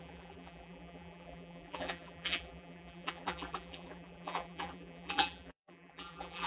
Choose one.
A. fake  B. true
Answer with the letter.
A